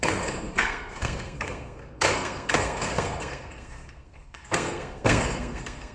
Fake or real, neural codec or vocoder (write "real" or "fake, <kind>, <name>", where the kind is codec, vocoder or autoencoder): fake, codec, SNAC